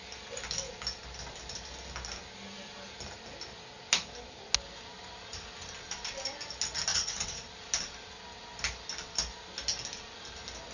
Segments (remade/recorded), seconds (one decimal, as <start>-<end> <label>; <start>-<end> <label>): 0.0-6.9 recorded; 6.9-7.5 remade; 7.5-10.7 recorded